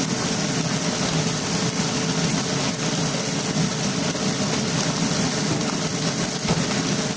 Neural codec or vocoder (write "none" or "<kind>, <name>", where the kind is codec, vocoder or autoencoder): none